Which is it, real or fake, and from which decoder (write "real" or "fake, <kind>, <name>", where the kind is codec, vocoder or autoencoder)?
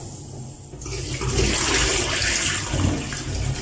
real